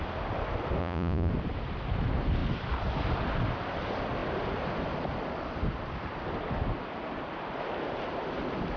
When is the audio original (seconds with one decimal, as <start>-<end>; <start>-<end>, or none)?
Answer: 0.0-0.8; 1.3-8.8